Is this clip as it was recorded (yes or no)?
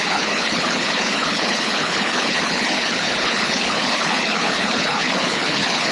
no